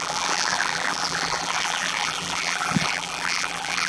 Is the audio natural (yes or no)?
no